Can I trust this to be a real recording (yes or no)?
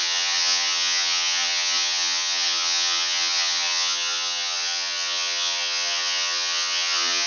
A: no